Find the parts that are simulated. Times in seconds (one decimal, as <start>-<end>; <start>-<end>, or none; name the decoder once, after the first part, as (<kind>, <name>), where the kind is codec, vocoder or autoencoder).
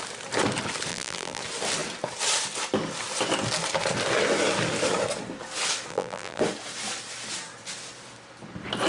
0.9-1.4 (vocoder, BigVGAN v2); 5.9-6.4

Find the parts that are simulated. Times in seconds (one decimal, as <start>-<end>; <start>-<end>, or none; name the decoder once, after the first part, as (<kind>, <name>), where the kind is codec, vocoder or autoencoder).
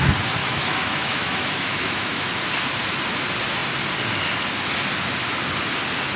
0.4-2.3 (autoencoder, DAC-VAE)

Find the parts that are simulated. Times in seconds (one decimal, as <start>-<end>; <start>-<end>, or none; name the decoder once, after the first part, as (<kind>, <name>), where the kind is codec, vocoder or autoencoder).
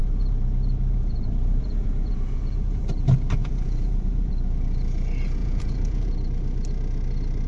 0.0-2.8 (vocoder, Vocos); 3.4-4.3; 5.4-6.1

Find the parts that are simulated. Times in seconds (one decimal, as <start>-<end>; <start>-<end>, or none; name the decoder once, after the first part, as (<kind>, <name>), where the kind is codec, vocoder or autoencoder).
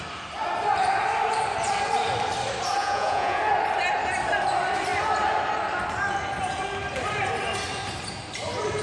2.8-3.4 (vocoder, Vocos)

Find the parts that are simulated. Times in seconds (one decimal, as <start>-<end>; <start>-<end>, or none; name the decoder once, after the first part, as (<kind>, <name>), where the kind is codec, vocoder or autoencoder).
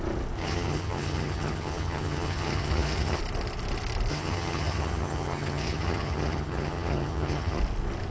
0.4-3.2 (vocoder, HiFi-GAN); 4.1-7.6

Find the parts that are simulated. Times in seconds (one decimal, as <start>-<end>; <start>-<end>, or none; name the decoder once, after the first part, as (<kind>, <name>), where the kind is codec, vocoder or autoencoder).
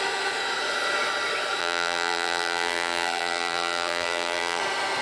1.6-4.6 (vocoder, BigVGAN v2)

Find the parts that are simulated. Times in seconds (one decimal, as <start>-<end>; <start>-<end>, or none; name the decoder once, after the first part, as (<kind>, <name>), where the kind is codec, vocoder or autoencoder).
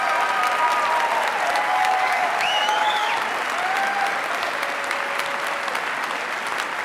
1.7-3.1 (codec, DAC)